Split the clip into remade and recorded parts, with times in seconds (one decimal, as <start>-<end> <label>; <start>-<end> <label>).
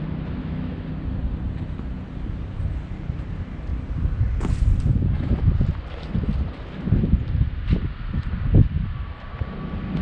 0.0-0.4 recorded; 0.4-0.9 remade; 0.9-10.0 recorded